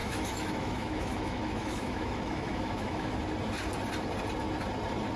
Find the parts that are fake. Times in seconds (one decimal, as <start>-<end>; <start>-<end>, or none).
0.0-3.1